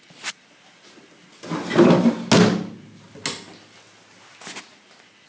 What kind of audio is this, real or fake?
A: real